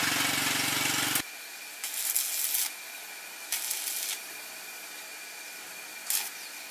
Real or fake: real